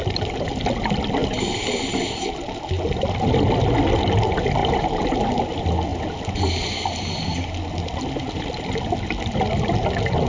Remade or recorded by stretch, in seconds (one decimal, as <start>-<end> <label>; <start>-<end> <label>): 0.0-0.5 remade; 0.5-4.6 recorded; 4.6-5.2 remade; 5.2-10.3 recorded